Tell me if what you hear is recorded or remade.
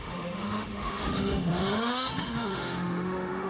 remade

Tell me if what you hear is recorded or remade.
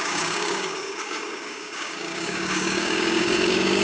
remade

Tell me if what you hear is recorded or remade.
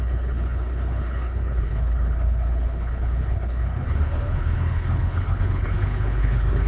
remade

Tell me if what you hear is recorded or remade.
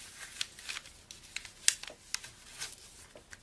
recorded